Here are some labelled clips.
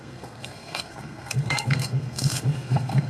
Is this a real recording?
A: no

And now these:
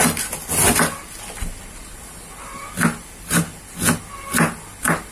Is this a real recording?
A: yes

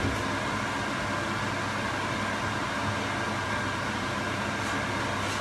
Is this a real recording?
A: yes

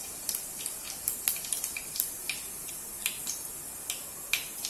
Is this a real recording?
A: yes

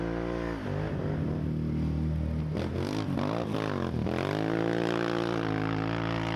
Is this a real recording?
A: yes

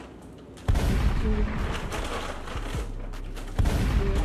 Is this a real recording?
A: yes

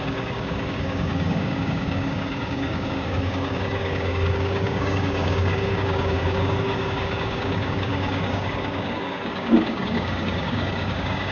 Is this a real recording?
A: no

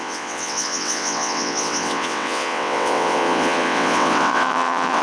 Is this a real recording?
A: no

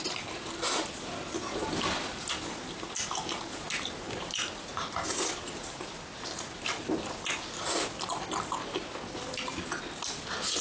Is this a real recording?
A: yes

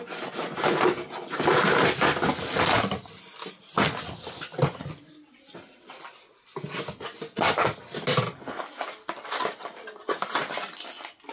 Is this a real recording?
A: yes